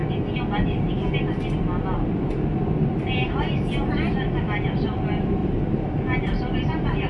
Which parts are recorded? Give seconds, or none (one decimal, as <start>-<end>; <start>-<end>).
0.0-5.4